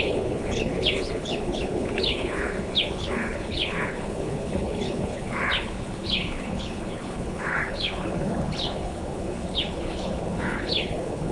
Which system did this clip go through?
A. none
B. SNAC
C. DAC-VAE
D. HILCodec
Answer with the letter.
D